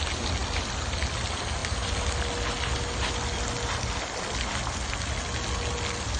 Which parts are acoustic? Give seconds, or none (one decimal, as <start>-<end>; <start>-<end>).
0.0-6.2